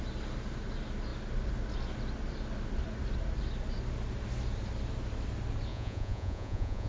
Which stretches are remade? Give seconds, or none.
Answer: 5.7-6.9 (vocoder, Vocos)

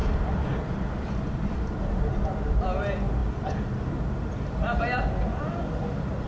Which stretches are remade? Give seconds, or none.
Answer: none

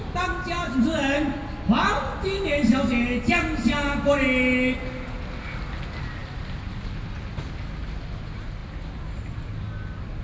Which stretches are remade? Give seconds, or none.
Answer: none

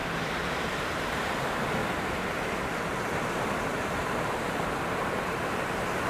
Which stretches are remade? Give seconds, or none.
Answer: 0.5-1.8 (vocoder, BigVGAN v2); 3.0-6.1

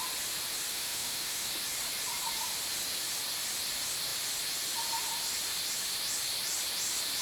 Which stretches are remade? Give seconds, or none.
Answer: 0.7-1.5 (autoencoder, DAC-VAE)